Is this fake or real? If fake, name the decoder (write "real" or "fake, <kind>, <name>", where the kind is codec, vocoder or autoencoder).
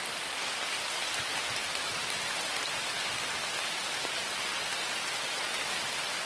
real